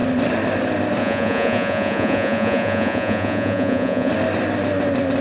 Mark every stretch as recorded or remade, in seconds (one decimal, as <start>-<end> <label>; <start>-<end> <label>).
0.0-1.0 recorded; 1.0-4.1 remade; 4.1-5.2 recorded